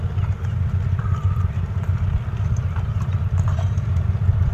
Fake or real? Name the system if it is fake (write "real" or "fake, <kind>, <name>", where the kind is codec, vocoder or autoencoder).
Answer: fake, vocoder, BigVGAN v2